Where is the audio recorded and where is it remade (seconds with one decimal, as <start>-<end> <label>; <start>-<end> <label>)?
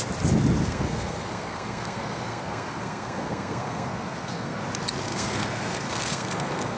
0.0-0.6 recorded; 0.6-4.6 remade; 4.6-5.1 recorded; 5.1-6.8 remade